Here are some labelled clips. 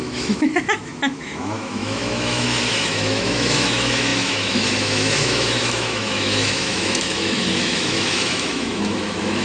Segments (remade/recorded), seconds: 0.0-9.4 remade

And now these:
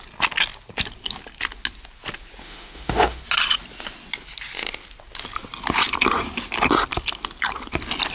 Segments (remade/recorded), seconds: 0.0-2.4 recorded; 2.4-3.2 remade; 3.2-8.1 recorded

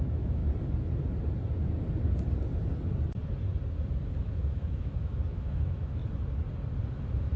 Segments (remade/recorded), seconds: 0.0-0.4 remade; 0.4-4.2 recorded; 4.2-6.0 remade; 6.0-6.9 recorded; 6.9-7.4 remade

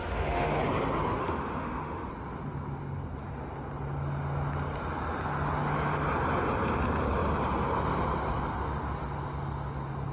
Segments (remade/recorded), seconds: 0.0-0.6 remade; 0.6-1.2 recorded; 1.2-2.1 remade; 2.1-10.1 recorded

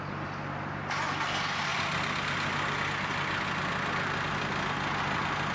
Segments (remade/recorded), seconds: 0.0-5.5 recorded